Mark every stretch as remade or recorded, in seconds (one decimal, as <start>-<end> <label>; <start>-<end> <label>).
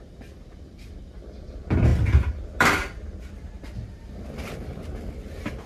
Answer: 0.0-5.7 recorded